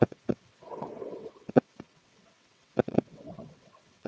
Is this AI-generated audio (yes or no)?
yes